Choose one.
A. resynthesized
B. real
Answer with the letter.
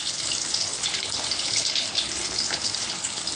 A